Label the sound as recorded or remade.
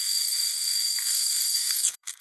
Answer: remade